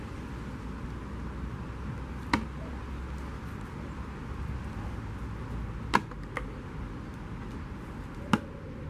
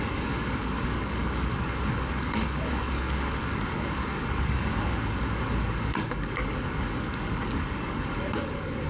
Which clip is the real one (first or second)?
first